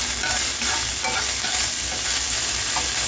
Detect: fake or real real